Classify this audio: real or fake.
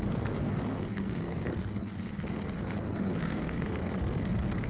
fake